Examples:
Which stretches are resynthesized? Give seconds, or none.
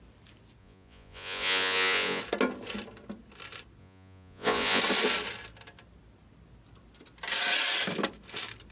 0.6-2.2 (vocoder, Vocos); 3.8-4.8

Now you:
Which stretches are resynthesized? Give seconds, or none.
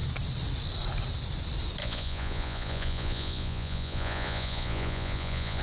1.8-5.6 (vocoder, Vocos)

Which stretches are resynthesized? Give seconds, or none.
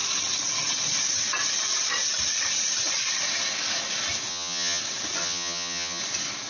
4.3-4.8 (vocoder, HiFi-GAN); 5.2-6.0